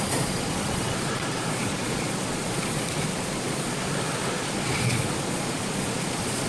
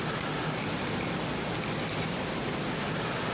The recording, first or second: second